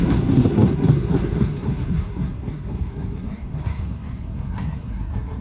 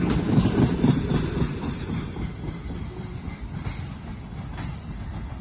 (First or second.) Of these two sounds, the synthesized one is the first